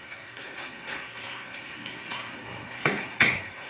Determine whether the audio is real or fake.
fake